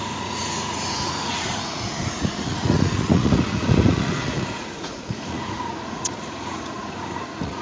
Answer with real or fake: fake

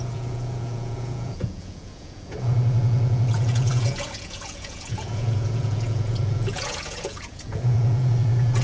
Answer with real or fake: fake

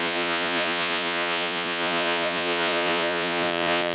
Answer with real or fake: fake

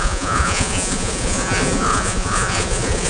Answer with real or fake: fake